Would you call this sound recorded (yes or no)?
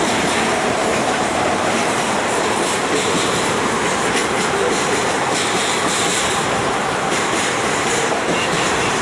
no